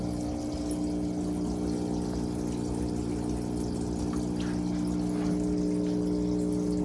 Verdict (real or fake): real